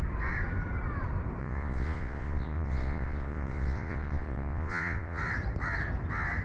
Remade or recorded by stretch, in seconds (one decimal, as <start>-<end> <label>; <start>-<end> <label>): 0.0-1.4 recorded; 1.4-5.2 remade; 5.2-6.4 recorded